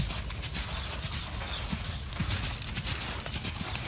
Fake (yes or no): no